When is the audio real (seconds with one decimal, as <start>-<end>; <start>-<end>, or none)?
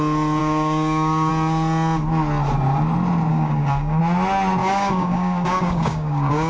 0.0-0.4; 1.3-3.3; 4.0-4.6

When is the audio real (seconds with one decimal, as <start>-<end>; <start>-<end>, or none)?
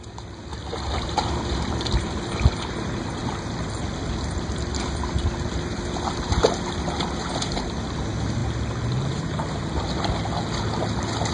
0.0-0.5; 2.3-11.3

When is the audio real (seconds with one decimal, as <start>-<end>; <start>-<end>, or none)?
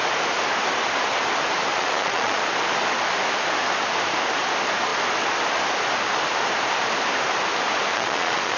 0.0-1.7; 2.4-7.9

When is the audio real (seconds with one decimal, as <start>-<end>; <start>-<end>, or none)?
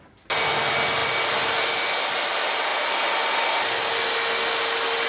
0.0-5.1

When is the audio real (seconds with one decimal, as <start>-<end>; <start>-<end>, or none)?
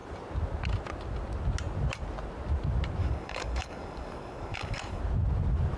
0.0-3.0; 5.0-5.8